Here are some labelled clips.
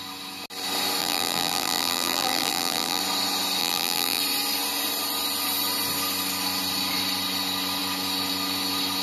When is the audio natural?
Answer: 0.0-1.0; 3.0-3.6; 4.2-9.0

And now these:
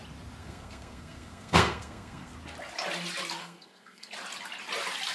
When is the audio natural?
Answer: 0.0-0.4; 2.3-3.4; 4.1-5.1